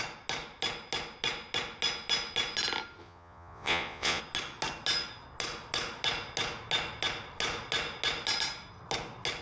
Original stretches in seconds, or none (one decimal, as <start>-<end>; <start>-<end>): 0.0-3.0; 4.2-9.4

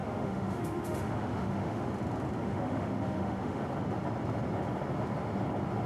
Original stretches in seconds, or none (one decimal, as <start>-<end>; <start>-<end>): 1.9-2.4; 3.6-5.9

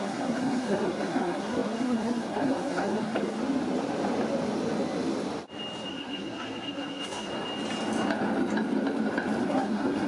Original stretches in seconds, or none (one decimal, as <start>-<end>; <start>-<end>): 3.4-5.9; 7.3-9.4

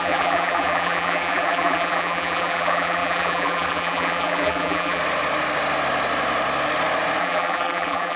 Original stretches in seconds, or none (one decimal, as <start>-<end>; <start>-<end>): 5.0-7.2